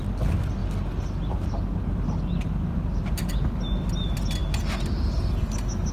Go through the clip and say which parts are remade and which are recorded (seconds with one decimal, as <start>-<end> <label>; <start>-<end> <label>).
0.0-2.7 recorded; 2.7-3.3 remade; 3.3-5.9 recorded